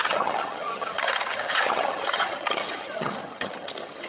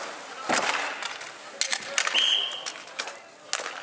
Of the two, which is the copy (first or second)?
first